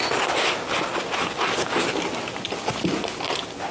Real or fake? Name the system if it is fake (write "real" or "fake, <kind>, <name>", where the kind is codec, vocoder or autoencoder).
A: real